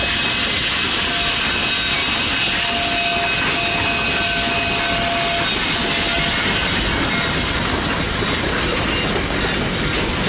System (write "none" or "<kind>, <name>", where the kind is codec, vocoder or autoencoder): none